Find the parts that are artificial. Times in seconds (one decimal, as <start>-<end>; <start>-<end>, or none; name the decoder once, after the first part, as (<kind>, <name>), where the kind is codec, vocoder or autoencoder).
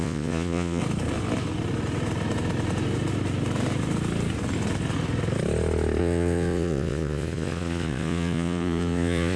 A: 0.0-0.8 (vocoder, Vocos); 6.0-9.4